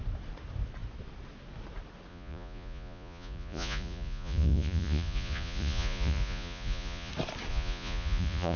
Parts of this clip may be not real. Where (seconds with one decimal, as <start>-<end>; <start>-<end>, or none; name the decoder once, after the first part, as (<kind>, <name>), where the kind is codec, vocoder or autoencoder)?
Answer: 2.1-7.1 (vocoder, Vocos); 7.5-8.6